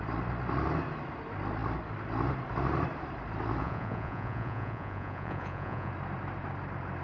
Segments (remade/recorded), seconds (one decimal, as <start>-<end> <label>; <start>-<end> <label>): 0.0-3.6 recorded; 3.6-5.9 remade; 5.9-7.0 recorded